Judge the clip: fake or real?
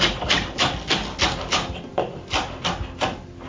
real